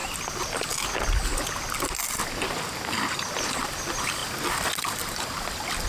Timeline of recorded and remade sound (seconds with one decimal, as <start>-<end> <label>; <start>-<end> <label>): 0.0-3.5 recorded; 3.5-4.2 remade; 4.2-4.9 recorded; 4.9-5.9 remade